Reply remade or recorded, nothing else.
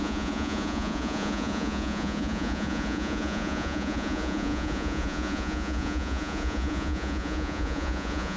remade